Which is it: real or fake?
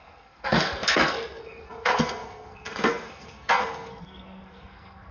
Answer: fake